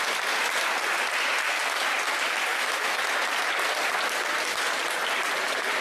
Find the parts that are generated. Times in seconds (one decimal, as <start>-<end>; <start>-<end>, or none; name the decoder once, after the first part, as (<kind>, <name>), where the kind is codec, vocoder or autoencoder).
2.5-3.0 (autoencoder, DAC-VAE)